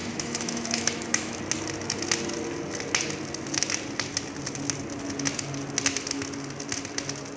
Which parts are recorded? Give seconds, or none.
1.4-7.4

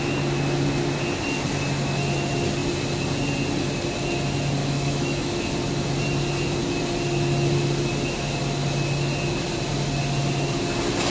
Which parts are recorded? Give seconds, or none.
0.0-4.6; 5.5-11.1

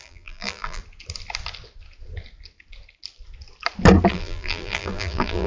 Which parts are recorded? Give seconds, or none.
0.8-4.1

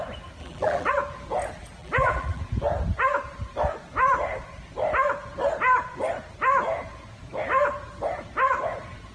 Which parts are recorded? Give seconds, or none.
0.0-0.4; 0.9-1.8; 2.4-9.1